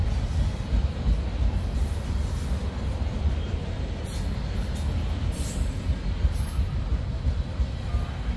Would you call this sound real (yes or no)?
yes